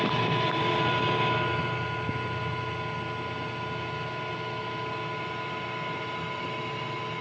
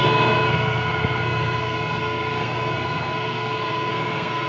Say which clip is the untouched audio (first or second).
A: first